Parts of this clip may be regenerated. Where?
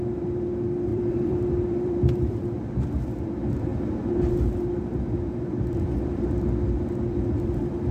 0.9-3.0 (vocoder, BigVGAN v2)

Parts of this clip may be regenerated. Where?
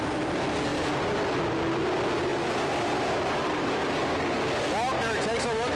2.3-4.1 (vocoder, BigVGAN v2)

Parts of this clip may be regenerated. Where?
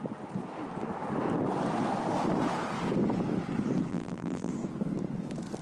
3.9-4.5 (vocoder, BigVGAN v2)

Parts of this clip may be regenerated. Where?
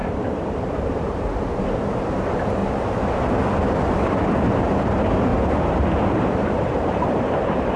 0.0-2.6 (vocoder, BigVGAN v2); 4.6-5.3; 6.1-7.8